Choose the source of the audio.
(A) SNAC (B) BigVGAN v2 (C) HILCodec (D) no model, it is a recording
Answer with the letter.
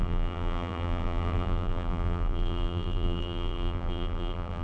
B